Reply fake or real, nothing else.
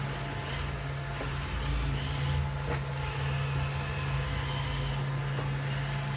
real